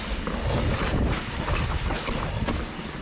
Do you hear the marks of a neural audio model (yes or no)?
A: no